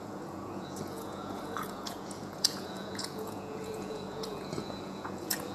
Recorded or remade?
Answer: remade